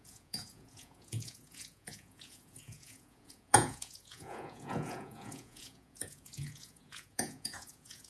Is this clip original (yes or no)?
no